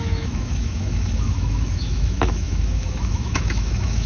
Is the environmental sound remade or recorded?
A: remade